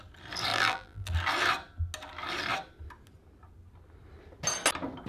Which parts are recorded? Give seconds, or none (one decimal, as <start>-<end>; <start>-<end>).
0.0-0.5; 1.1-5.1